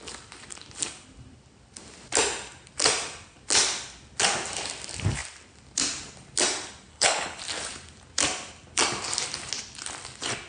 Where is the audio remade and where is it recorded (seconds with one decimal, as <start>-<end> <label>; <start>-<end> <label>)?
0.0-6.9 recorded; 6.9-7.4 remade; 7.4-10.5 recorded